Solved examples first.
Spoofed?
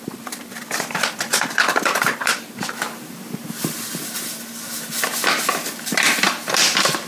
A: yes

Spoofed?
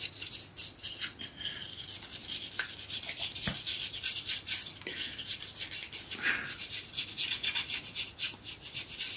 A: no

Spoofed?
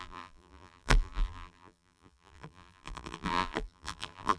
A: yes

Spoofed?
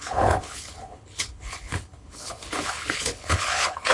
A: yes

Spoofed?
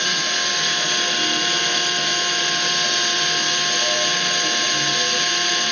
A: no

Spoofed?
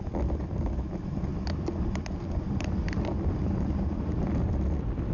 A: no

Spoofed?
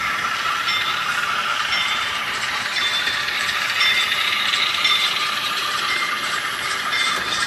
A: yes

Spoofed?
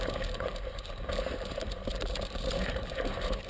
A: yes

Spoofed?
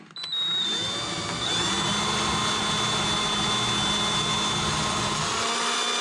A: no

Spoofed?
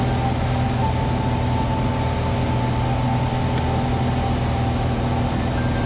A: no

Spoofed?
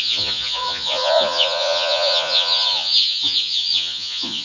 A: yes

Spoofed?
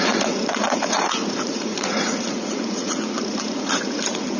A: yes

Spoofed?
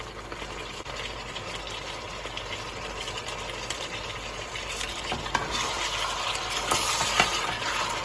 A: no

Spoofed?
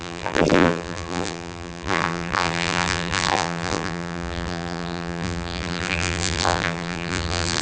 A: yes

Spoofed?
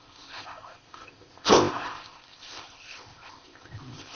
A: yes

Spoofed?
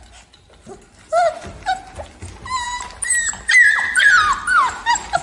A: no